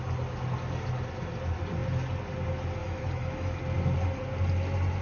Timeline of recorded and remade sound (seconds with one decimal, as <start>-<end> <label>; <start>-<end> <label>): 0.0-2.8 recorded; 2.8-3.6 remade; 3.6-5.0 recorded

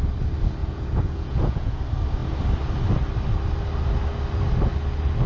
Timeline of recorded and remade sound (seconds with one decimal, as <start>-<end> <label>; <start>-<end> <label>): 0.0-0.6 recorded; 0.6-1.8 remade; 1.8-5.3 recorded

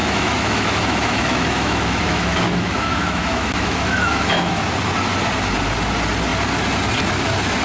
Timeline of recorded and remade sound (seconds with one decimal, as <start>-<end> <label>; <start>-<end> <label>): 0.0-4.6 remade; 4.6-7.6 recorded

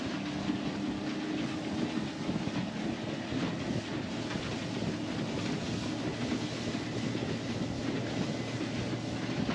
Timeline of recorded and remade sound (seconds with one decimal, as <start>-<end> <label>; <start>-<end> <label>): 0.0-9.5 recorded

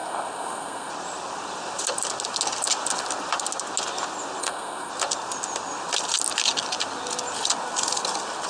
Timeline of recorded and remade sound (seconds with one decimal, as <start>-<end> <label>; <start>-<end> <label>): 0.0-0.9 remade; 0.9-4.4 recorded; 4.4-4.9 remade; 4.9-8.5 recorded

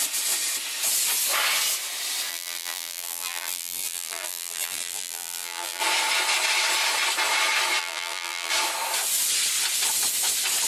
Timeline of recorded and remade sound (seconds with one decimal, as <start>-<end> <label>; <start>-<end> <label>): 0.0-2.3 recorded; 2.3-5.8 remade; 5.8-7.8 recorded; 7.8-8.5 remade; 8.5-10.7 recorded